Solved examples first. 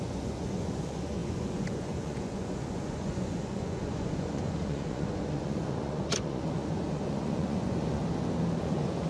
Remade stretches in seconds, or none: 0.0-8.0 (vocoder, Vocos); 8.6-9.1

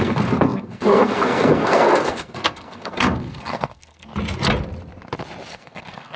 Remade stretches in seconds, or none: 0.0-4.1 (codec, SNAC); 5.5-6.2

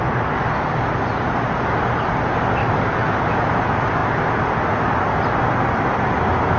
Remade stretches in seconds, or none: 2.6-3.5 (autoencoder, DAC-VAE)

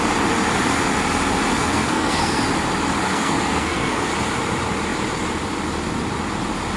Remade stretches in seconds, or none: 1.5-2.4 (codec, SNAC); 3.0-4.1

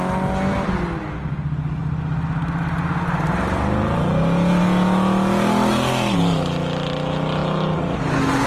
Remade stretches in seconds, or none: none